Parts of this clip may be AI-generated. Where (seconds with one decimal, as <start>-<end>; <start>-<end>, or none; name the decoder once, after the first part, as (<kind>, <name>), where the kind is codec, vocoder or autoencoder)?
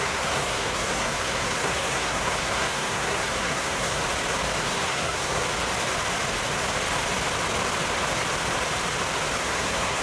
0.0-4.0 (codec, SNAC); 4.6-5.4; 9.4-10.0